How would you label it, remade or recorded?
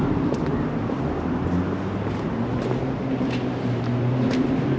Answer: recorded